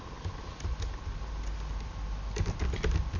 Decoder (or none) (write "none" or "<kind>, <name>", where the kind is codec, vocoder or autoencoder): none